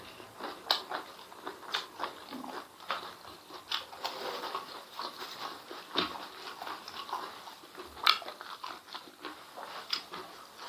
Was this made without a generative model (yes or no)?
yes